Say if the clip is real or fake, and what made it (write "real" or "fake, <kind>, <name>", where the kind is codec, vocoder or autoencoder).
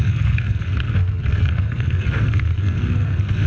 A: fake, codec, SNAC